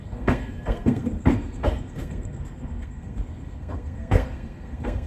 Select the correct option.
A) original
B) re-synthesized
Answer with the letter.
B